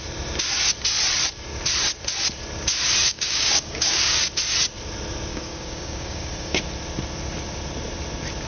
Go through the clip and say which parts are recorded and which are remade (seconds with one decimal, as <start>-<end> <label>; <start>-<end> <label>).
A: 0.0-3.0 recorded; 3.0-4.2 remade; 4.2-5.3 recorded; 5.3-6.6 remade; 6.6-8.5 recorded